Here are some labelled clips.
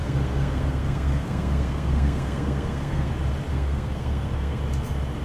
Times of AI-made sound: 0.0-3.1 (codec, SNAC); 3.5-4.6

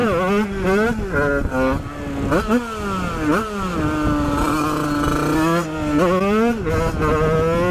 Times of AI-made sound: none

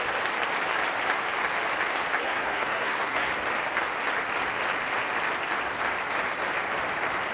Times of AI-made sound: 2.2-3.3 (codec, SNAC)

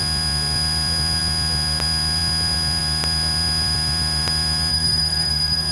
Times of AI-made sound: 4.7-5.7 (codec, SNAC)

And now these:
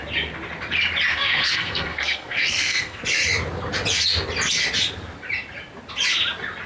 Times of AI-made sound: 1.1-3.0 (codec, SNAC)

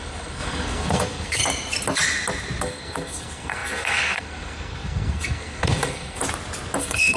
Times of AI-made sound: 0.0-1.4 (codec, SNAC); 2.6-6.2; 6.8-7.2

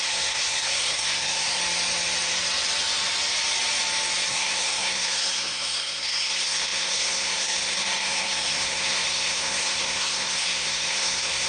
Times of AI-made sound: 0.0-1.6 (codec, SNAC); 4.3-11.5

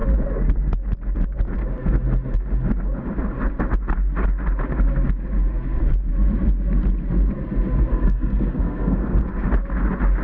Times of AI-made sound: 7.9-9.2 (codec, SNAC)